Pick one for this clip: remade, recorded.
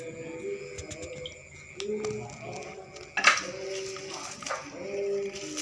recorded